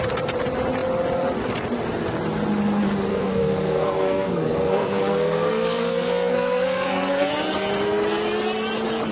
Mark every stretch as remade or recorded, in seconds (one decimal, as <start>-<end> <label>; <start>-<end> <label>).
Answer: 0.0-3.1 recorded; 3.1-7.3 remade; 7.3-9.1 recorded